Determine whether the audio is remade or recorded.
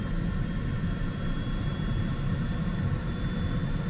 remade